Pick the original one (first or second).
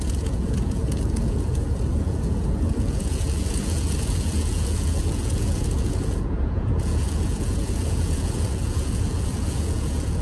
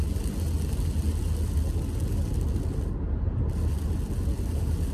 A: second